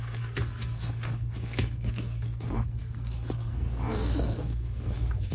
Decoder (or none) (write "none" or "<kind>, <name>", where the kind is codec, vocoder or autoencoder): codec, SNAC